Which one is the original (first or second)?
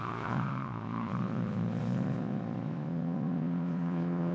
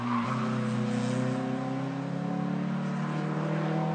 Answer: second